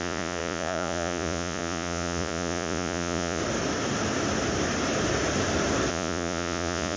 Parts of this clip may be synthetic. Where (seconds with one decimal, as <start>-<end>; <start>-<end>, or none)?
0.0-3.4; 5.9-7.0